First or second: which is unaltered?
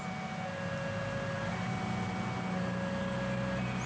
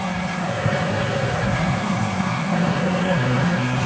first